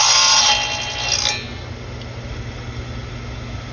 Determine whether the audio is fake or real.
real